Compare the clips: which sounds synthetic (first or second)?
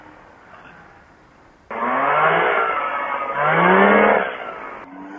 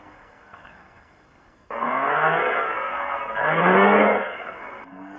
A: second